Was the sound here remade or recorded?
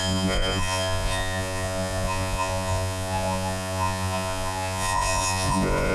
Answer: remade